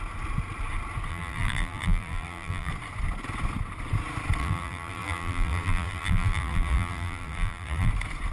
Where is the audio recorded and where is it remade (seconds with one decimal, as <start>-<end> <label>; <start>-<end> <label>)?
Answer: 0.0-1.1 recorded; 1.1-2.7 remade; 2.7-4.4 recorded; 4.4-7.9 remade; 7.9-8.3 recorded

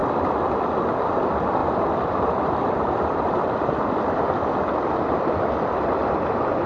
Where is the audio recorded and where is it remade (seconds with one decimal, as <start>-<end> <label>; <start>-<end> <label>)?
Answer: 0.0-1.6 recorded; 1.6-4.7 remade; 4.7-6.7 recorded

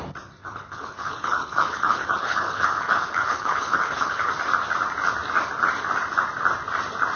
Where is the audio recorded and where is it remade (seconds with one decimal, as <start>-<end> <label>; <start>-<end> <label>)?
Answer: 0.0-0.4 recorded; 0.4-4.3 remade; 4.3-7.2 recorded

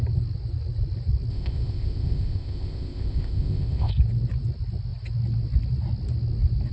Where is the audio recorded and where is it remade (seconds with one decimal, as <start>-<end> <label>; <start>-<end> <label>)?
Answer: 0.0-1.3 recorded; 1.3-3.9 remade; 3.9-6.7 recorded

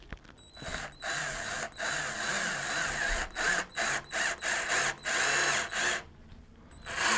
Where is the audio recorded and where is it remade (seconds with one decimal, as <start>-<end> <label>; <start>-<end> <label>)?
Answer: 0.0-7.2 recorded

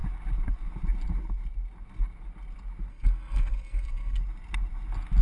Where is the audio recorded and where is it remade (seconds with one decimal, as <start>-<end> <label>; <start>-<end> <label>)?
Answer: 0.0-2.9 recorded; 2.9-4.2 remade; 4.2-5.2 recorded

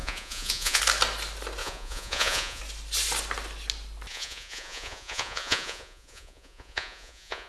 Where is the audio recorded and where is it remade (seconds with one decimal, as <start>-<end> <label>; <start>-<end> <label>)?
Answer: 0.0-0.8 remade; 0.8-1.6 recorded; 1.6-2.6 remade; 2.6-4.1 recorded; 4.1-7.5 remade

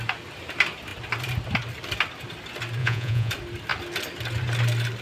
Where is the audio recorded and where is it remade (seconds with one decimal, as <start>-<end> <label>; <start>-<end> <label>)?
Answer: 0.0-2.8 recorded; 2.8-3.3 remade; 3.3-5.0 recorded